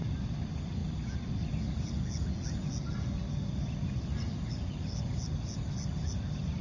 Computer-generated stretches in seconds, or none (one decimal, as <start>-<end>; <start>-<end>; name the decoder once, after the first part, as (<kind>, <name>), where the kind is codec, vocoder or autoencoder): none